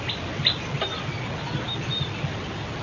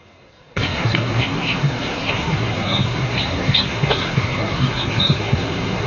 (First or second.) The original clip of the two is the first